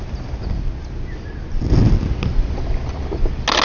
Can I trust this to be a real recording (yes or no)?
yes